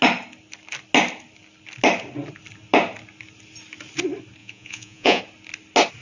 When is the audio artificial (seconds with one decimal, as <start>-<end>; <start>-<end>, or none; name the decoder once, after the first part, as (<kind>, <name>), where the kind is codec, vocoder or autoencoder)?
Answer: 4.4-5.2 (vocoder, Vocos)